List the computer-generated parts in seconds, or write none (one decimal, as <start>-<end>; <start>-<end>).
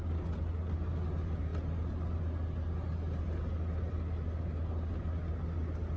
none